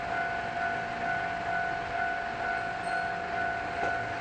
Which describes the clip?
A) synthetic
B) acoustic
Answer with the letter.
B